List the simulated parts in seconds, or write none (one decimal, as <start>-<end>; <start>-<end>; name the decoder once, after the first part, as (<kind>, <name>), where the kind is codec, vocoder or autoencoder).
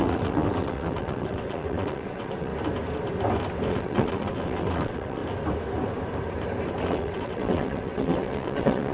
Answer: 0.0-2.5 (vocoder, WaveNeXt); 3.7-5.2; 6.8-8.9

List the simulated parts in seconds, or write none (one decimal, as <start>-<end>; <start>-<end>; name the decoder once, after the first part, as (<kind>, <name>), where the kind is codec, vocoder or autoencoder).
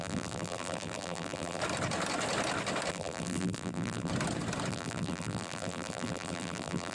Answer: 0.0-1.6 (vocoder, BigVGAN v2); 2.9-4.1; 4.7-6.9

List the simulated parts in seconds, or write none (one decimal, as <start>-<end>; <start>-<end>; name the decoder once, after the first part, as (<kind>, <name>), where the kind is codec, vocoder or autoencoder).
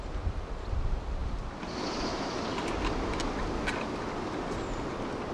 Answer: none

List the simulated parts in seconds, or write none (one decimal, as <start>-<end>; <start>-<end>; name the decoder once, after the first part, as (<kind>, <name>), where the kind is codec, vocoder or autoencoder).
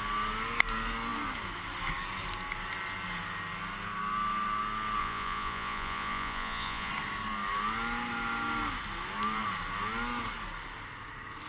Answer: 5.0-6.9 (vocoder, Vocos)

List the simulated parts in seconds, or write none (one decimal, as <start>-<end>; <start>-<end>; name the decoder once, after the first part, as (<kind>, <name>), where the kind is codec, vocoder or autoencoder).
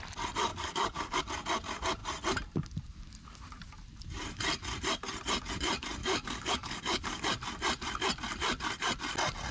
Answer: 0.5-1.2 (codec, DAC); 6.0-7.2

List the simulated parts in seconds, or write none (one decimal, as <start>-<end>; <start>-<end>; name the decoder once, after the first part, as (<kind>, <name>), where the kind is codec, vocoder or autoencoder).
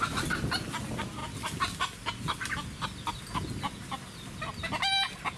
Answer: none